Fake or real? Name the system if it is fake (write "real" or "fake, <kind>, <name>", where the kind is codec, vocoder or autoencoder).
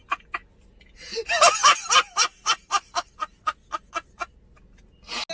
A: real